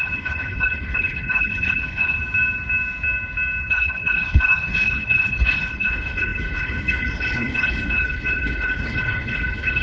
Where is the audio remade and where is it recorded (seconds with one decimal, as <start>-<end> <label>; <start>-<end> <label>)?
0.0-2.2 remade; 2.2-3.7 recorded; 3.7-9.8 remade